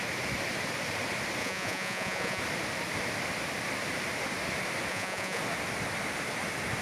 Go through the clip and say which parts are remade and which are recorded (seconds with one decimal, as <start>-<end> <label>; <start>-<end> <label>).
0.0-1.4 recorded; 1.4-2.4 remade; 2.4-4.9 recorded; 4.9-5.4 remade; 5.4-6.8 recorded

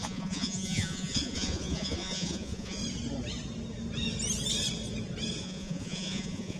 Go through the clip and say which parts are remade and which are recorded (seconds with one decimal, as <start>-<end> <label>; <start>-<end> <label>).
0.0-2.8 remade; 2.8-5.4 recorded; 5.4-6.6 remade

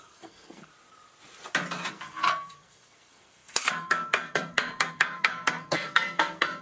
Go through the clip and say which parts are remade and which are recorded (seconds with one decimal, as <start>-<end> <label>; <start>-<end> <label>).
0.0-0.7 remade; 0.7-1.9 recorded; 1.9-6.6 remade

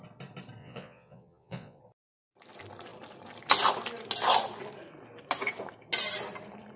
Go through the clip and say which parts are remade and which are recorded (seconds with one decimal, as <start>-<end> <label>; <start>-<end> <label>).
0.0-0.6 recorded; 0.6-1.8 remade; 1.8-6.8 recorded

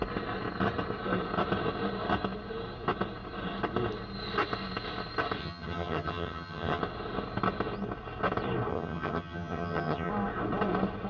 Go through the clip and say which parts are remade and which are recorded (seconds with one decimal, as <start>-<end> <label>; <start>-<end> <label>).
0.0-5.4 recorded; 5.4-6.8 remade; 6.8-8.7 recorded; 8.7-10.1 remade; 10.1-11.1 recorded